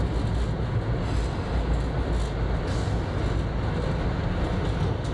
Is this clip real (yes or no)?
yes